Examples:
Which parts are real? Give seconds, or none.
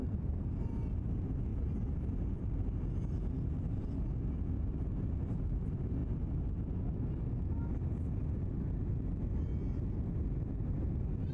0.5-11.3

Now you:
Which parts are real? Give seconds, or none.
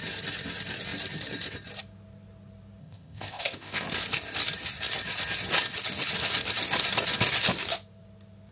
0.0-2.8; 3.8-8.5